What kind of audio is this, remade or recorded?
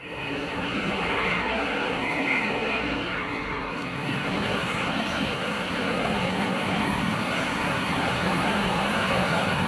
remade